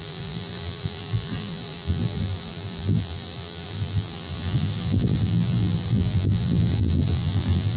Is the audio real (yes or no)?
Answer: no